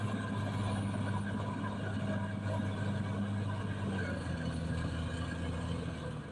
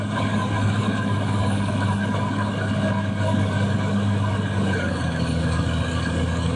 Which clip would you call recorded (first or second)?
first